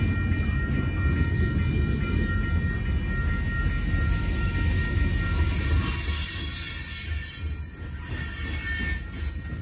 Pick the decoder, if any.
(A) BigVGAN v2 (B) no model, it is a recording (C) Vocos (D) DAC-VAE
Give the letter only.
B